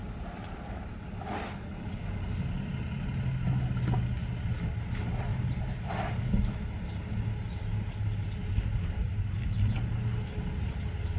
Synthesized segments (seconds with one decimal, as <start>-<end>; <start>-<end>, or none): none